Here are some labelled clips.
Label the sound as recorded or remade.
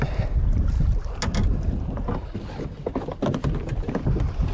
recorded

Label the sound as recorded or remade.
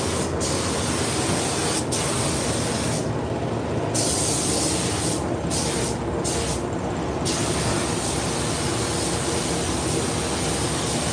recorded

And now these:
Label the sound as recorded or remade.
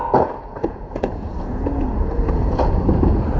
remade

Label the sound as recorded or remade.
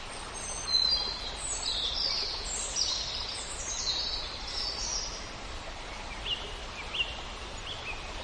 recorded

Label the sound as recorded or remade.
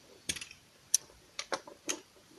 remade